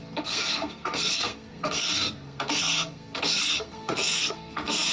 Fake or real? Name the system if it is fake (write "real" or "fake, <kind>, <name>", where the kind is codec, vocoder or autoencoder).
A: fake, codec, SNAC